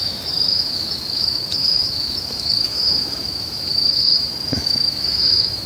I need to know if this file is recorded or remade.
remade